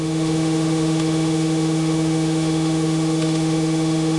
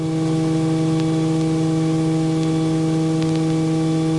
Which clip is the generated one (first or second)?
first